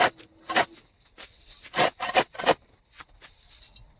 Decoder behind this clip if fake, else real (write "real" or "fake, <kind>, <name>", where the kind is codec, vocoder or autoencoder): real